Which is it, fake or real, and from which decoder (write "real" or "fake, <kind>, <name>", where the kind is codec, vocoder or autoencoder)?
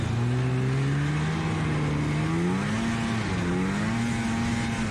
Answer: real